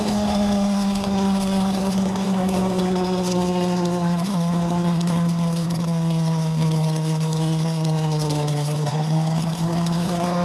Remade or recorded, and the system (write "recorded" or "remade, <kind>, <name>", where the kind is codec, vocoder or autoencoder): remade, codec, SNAC